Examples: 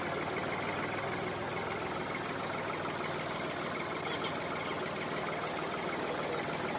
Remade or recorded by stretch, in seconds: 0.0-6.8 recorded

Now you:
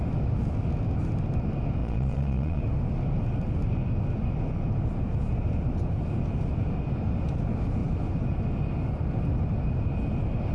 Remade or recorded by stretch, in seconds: 0.0-1.8 recorded; 1.8-2.6 remade; 2.6-10.5 recorded

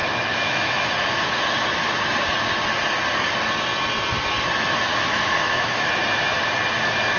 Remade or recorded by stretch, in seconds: 0.0-0.9 remade; 0.9-4.9 recorded; 4.9-5.9 remade; 5.9-7.2 recorded

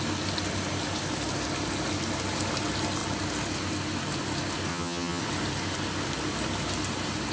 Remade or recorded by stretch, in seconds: 0.0-4.7 recorded; 4.7-5.2 remade; 5.2-7.3 recorded

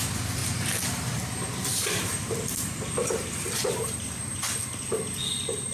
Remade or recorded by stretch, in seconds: 0.0-0.4 recorded; 0.4-1.1 remade; 1.1-1.7 recorded; 1.7-4.5 remade; 4.5-5.7 recorded

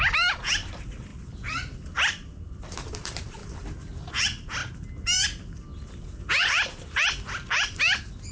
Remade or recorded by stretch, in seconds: 0.0-4.6 remade; 4.6-6.2 recorded; 6.2-8.3 remade

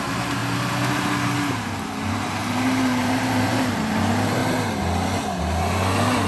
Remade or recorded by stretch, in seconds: 0.0-0.4 remade; 0.4-1.5 recorded; 1.5-4.4 remade; 4.4-6.3 recorded

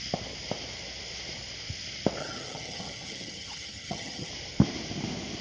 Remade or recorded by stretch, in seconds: 0.0-2.2 recorded; 2.2-4.3 remade; 4.3-5.4 recorded